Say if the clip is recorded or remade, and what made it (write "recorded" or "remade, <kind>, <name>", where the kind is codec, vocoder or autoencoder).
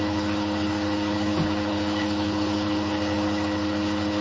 remade, codec, HILCodec